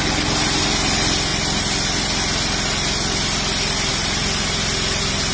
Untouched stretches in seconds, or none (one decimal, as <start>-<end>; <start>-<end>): 0.0-5.3